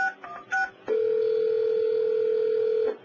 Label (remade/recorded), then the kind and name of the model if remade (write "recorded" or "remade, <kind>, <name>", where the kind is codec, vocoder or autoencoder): recorded